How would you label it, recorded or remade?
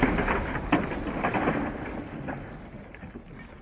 recorded